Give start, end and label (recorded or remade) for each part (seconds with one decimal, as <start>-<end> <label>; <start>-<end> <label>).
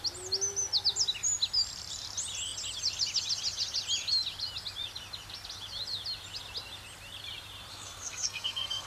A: 0.0-7.7 recorded; 7.7-8.9 remade